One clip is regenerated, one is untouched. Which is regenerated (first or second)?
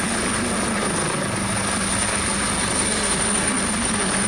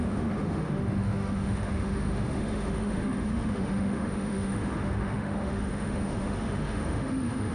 second